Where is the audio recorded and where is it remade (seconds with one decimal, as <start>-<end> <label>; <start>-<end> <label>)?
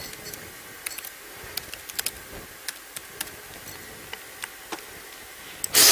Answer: 0.0-5.9 recorded